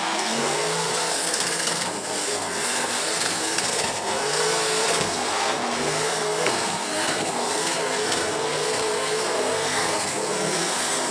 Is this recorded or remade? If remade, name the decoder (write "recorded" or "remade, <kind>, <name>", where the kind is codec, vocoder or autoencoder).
remade, codec, SNAC